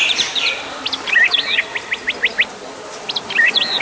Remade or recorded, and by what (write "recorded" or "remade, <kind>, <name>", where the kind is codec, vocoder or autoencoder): remade, vocoder, BigVGAN v2